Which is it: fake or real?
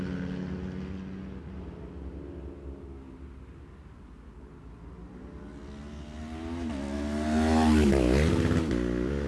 real